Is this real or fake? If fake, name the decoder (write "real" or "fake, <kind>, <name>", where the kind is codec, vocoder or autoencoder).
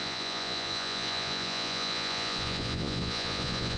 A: fake, vocoder, Vocos